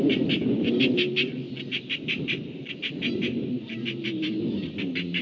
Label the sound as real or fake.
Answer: real